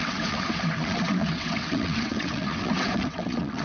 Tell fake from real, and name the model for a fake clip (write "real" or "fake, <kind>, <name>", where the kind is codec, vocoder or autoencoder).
fake, vocoder, WaveNeXt